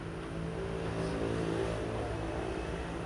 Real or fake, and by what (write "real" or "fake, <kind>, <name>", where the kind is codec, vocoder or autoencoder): real